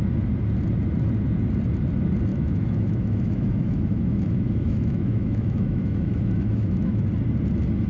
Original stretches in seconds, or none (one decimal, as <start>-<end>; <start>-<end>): 0.0-2.3; 7.0-7.9